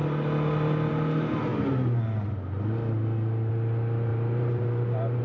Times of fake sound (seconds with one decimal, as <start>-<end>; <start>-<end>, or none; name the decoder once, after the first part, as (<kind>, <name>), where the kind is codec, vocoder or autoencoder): 4.1-5.2 (vocoder, BigVGAN v2)